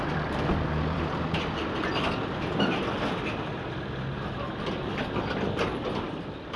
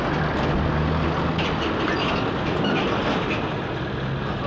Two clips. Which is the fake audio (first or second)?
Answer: first